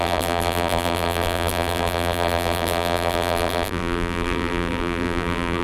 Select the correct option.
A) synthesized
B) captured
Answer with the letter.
A